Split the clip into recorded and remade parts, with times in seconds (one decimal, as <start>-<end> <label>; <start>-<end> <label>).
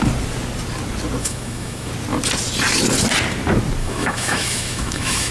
0.0-1.2 recorded; 1.2-1.9 remade; 1.9-3.8 recorded; 3.8-5.3 remade